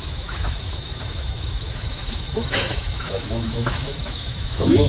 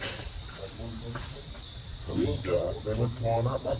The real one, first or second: second